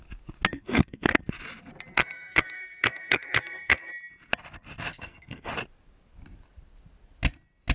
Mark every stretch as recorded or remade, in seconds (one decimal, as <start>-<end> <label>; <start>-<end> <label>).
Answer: 0.0-0.5 recorded; 0.5-1.2 remade; 1.2-1.9 recorded; 1.9-3.9 remade; 3.9-4.9 recorded; 4.9-5.5 remade; 5.5-7.7 recorded